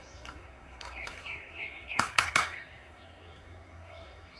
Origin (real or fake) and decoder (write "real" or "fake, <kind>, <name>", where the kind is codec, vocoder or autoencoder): fake, codec, SNAC